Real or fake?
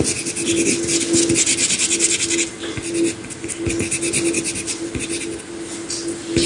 real